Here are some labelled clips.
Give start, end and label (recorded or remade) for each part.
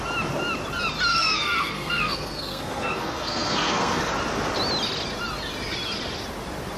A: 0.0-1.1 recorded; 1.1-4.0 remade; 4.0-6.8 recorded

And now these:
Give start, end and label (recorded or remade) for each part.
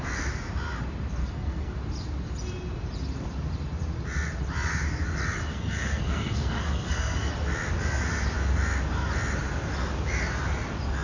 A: 0.0-1.2 recorded; 1.2-1.7 remade; 1.7-5.5 recorded; 5.5-7.3 remade; 7.3-11.0 recorded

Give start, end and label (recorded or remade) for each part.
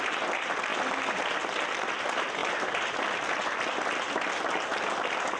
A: 0.0-5.4 recorded